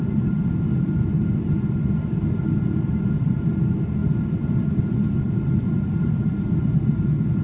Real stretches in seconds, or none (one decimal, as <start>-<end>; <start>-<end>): 0.0-7.4